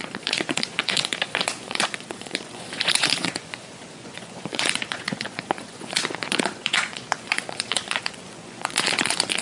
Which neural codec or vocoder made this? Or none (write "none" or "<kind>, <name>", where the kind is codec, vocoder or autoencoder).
vocoder, Vocos